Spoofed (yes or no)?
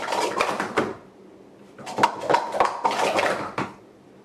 no